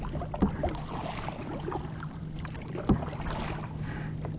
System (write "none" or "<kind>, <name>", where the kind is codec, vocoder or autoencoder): none